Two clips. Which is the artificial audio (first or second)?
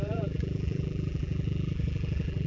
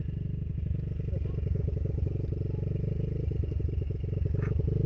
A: first